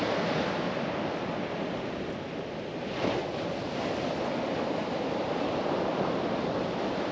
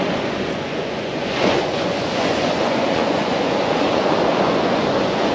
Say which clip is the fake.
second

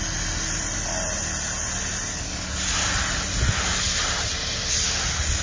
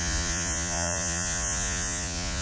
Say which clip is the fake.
second